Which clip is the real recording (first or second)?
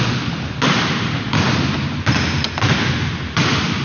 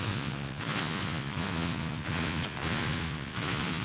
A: first